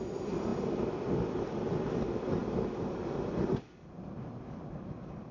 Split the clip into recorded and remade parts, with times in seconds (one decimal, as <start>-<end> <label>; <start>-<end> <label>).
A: 0.0-5.3 recorded